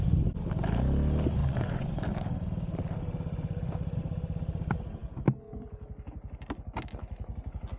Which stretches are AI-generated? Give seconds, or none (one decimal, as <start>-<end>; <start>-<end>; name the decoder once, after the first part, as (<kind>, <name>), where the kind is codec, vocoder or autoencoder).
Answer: 1.4-2.0 (vocoder, Vocos)